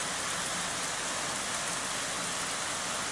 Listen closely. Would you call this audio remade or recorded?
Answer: recorded